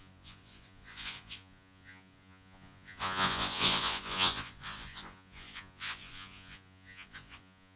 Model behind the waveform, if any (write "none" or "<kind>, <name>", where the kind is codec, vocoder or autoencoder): vocoder, Vocos